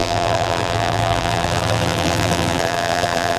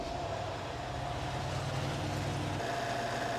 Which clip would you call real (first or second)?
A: second